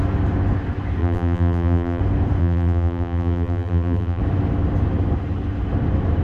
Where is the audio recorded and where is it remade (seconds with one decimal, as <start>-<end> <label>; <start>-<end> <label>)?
0.0-1.0 recorded; 1.0-2.0 remade; 2.0-2.4 recorded; 2.4-4.2 remade; 4.2-6.2 recorded